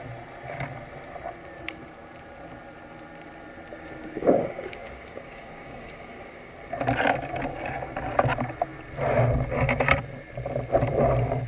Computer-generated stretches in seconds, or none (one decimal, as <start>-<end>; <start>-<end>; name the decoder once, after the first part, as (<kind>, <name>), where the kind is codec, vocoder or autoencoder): 3.7-6.5 (codec, DAC)